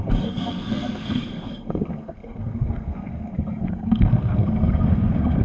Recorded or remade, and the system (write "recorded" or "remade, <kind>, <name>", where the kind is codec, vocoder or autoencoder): remade, codec, SNAC